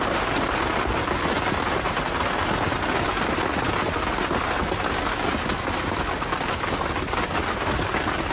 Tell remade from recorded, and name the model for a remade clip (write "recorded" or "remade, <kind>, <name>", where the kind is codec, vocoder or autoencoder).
recorded